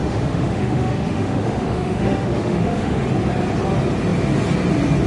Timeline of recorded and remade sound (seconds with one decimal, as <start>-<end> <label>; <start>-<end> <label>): 0.0-3.1 remade; 3.1-5.1 recorded